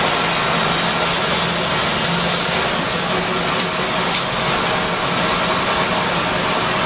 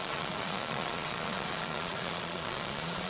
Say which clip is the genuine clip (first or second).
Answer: first